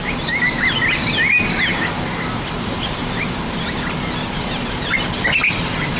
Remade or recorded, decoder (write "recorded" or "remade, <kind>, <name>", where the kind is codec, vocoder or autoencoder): recorded